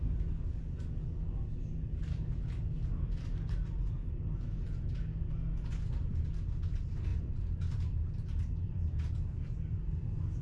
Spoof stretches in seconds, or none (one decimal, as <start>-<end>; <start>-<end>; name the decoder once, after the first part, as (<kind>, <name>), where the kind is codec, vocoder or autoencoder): 7.1-9.1 (vocoder, BigVGAN v2)